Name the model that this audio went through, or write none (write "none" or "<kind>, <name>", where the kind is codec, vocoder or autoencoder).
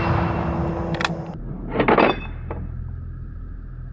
none